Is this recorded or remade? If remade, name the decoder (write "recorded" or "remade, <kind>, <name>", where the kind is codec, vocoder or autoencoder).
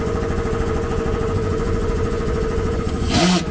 remade, vocoder, Vocos